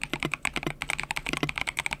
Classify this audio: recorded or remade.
recorded